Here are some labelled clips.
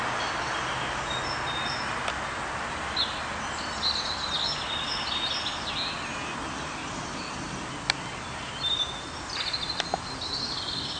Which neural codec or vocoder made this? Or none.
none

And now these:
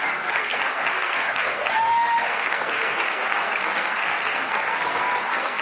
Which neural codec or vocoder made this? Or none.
codec, SNAC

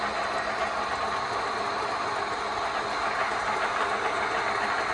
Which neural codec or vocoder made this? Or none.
none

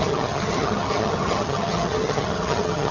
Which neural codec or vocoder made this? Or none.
vocoder, HiFi-GAN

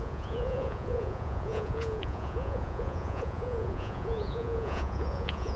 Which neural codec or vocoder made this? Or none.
vocoder, Vocos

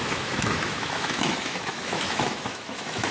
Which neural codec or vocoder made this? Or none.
autoencoder, DAC-VAE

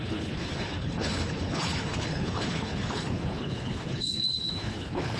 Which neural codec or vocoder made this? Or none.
codec, HILCodec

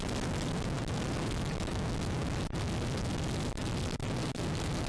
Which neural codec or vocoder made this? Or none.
none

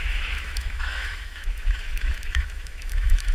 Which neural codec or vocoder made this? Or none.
autoencoder, DAC-VAE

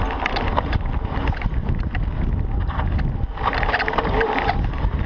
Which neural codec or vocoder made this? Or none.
none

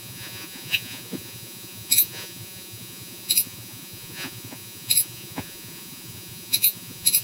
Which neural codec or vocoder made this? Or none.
vocoder, Vocos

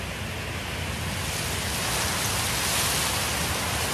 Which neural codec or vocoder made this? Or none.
none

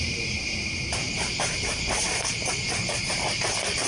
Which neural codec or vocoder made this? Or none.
vocoder, BigVGAN v2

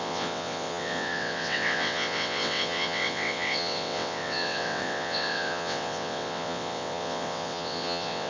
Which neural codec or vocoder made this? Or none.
vocoder, WaveNeXt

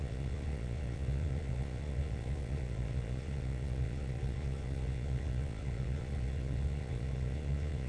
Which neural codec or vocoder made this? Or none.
vocoder, Vocos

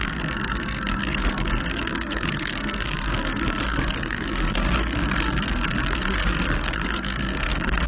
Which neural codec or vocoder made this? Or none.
codec, SNAC